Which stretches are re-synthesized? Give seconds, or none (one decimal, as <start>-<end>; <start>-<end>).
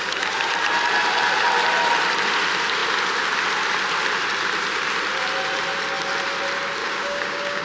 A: 6.8-7.6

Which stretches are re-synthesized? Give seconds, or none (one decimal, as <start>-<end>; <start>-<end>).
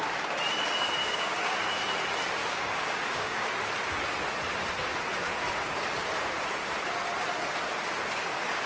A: 1.0-1.7; 2.4-3.5